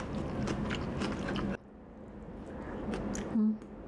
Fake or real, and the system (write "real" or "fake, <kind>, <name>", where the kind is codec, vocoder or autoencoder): real